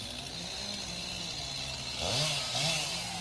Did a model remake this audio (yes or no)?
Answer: no